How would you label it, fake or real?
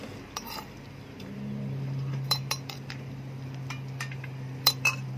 fake